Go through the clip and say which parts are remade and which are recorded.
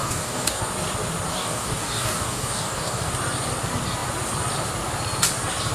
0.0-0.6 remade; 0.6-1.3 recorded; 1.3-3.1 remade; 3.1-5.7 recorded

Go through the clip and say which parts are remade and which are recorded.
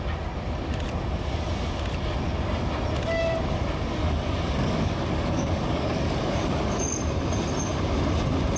0.0-4.0 recorded; 4.0-7.0 remade; 7.0-8.6 recorded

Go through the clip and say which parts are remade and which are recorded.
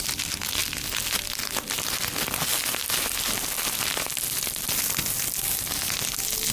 0.0-6.5 recorded